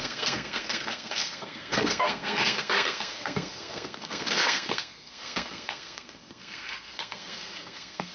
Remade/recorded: remade